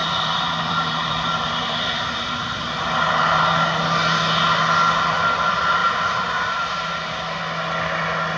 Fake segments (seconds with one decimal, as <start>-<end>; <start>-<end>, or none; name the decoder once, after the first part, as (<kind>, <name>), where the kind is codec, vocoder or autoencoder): 0.0-3.4 (vocoder, BigVGAN v2); 5.8-6.9